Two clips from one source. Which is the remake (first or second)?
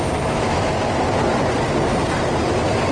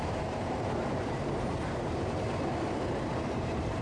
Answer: second